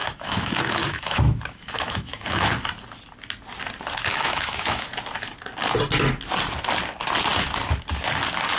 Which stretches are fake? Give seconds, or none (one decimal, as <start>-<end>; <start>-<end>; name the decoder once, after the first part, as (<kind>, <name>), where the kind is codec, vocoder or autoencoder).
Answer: 0.0-2.5 (autoencoder, DAC-VAE); 4.1-4.9